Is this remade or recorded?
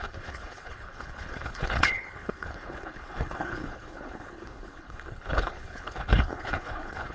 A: remade